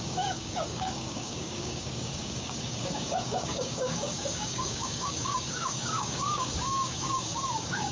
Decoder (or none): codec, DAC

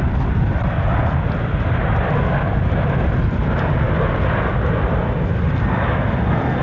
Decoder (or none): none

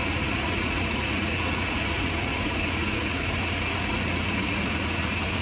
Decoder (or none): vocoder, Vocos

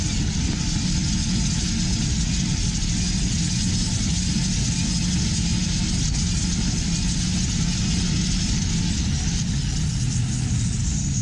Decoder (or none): none